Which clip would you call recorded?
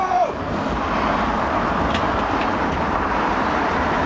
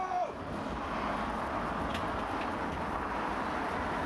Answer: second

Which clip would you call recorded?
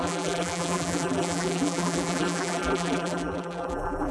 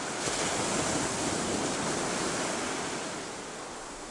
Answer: second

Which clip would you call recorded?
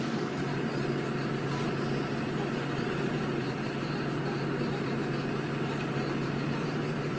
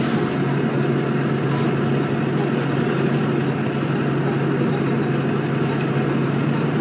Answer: second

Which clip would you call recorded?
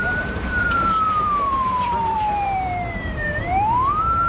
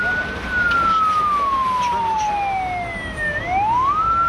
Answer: second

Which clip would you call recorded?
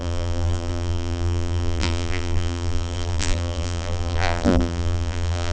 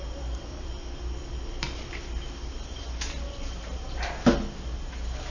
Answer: second